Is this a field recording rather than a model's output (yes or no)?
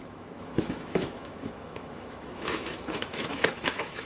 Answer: no